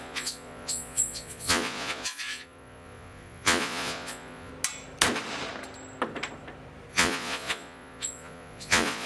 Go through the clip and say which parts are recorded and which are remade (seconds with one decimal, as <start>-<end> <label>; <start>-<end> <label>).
0.0-4.5 remade; 4.5-6.9 recorded; 6.9-9.1 remade